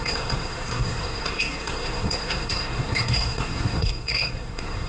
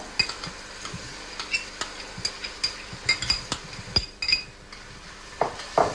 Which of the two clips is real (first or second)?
second